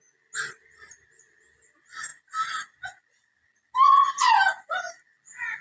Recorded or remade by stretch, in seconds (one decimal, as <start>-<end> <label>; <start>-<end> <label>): 0.0-5.6 recorded